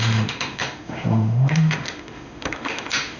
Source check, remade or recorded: remade